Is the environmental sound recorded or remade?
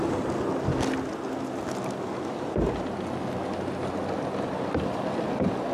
recorded